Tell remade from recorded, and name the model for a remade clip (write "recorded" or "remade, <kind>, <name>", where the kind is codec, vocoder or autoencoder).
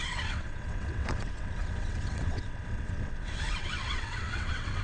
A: remade, vocoder, WaveNeXt